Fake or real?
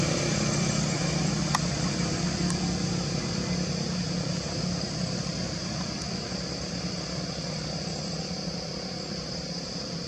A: real